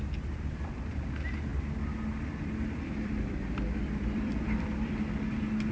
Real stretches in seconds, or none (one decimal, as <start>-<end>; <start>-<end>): 0.0-1.5; 4.9-5.7